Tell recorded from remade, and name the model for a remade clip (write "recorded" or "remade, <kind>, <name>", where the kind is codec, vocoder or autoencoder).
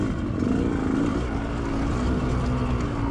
recorded